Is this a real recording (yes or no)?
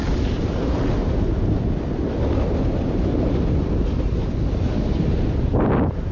yes